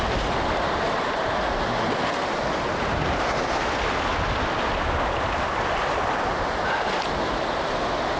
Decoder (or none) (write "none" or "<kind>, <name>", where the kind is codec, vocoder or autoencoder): none